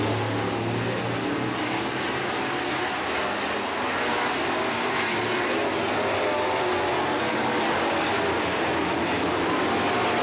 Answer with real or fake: real